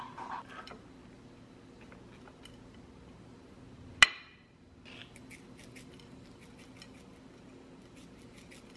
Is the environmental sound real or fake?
real